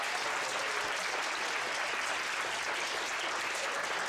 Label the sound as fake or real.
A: real